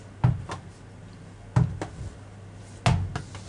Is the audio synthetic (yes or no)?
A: no